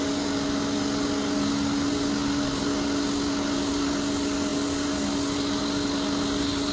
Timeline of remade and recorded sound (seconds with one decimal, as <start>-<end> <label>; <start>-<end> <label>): 0.0-6.7 recorded